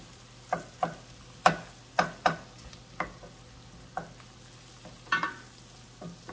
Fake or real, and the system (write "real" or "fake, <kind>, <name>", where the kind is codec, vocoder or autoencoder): real